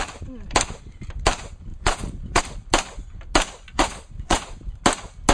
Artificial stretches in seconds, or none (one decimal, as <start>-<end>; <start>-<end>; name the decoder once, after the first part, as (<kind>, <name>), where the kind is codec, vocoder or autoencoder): 1.7-2.4 (vocoder, Vocos); 3.7-4.4